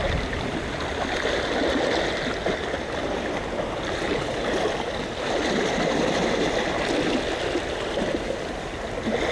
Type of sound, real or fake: real